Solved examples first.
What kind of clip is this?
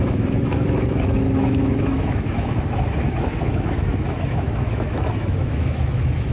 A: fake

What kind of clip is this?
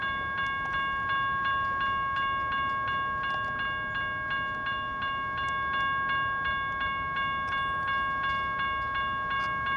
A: real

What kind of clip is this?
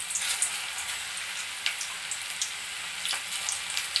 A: real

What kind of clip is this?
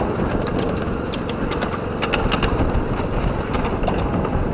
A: real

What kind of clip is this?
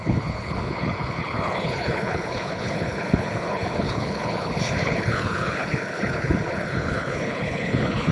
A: fake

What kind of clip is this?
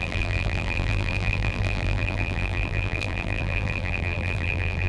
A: fake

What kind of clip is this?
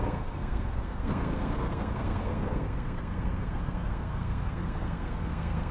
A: fake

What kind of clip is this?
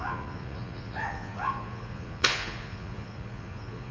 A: fake